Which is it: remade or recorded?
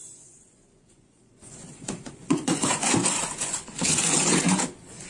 remade